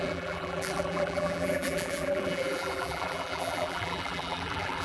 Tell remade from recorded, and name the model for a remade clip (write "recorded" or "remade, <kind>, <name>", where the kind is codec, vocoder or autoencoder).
remade, vocoder, BigVGAN v2